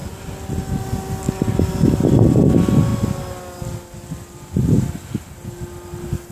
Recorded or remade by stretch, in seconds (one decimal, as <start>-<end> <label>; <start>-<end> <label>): 0.0-6.3 recorded